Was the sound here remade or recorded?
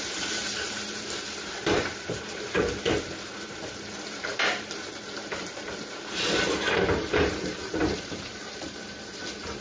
remade